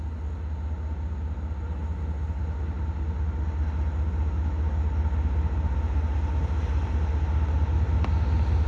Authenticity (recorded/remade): recorded